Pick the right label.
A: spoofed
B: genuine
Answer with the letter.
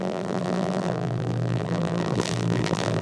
A